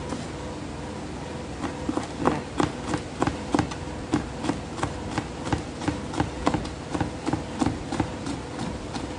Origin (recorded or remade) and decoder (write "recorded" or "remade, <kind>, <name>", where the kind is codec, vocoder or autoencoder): recorded